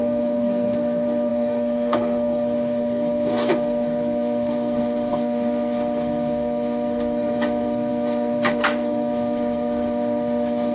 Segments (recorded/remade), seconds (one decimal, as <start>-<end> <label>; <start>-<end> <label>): 0.0-10.7 remade